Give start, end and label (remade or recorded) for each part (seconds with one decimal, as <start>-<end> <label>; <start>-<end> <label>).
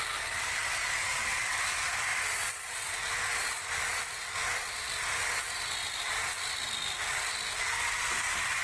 0.0-5.8 recorded; 5.8-6.3 remade; 6.3-8.6 recorded